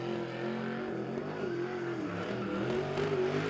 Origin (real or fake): real